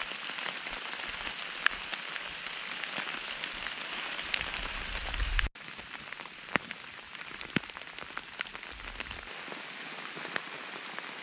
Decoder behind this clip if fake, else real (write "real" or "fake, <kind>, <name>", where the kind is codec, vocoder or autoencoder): real